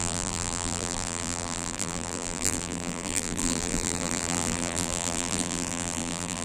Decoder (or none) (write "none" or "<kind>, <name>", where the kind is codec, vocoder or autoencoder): vocoder, BigVGAN v2